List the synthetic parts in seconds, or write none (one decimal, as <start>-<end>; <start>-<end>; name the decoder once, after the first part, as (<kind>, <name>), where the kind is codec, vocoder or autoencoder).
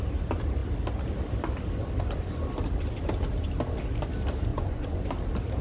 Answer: 4.5-5.0 (vocoder, Vocos)